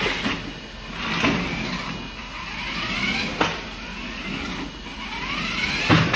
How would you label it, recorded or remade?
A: recorded